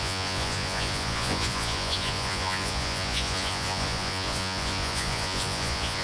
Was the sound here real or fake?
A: fake